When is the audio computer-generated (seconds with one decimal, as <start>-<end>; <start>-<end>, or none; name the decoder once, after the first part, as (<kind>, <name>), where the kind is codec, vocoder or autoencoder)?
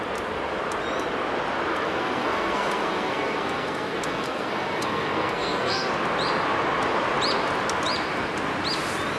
1.7-5.9 (codec, SNAC)